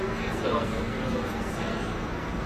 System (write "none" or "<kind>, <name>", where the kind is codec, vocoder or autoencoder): codec, SNAC